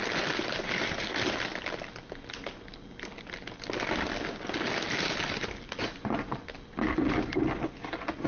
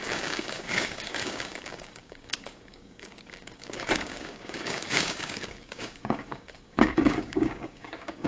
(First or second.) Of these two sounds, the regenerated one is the second